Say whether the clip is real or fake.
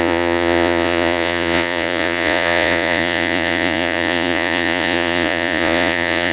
fake